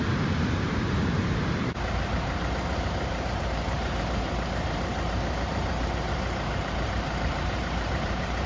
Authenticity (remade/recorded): remade